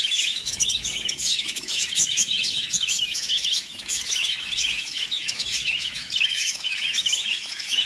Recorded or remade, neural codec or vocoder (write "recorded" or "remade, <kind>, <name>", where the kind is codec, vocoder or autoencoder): remade, autoencoder, DAC-VAE